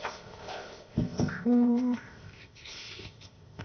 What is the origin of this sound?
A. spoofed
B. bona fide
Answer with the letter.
A